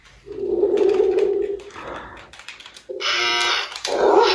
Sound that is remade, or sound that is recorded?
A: remade